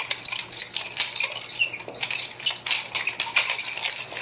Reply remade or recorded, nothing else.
recorded